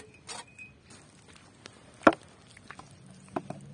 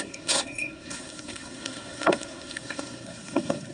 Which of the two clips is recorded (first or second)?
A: first